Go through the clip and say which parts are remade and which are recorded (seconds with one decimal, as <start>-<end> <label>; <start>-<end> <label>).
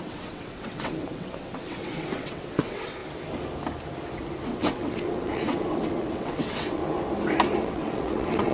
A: 0.0-3.0 remade; 3.0-4.5 recorded; 4.5-6.8 remade; 6.8-7.6 recorded; 7.6-8.5 remade